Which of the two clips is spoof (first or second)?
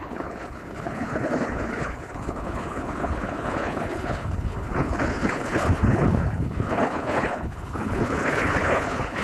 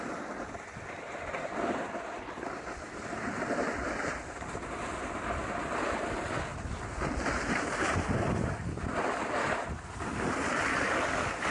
first